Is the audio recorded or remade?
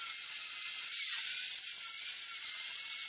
recorded